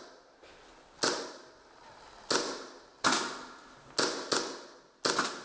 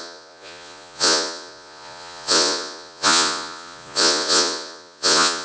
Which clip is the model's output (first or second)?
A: second